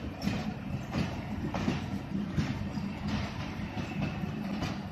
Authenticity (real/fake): real